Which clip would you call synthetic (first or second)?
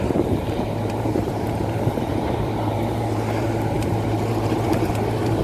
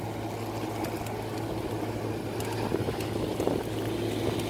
first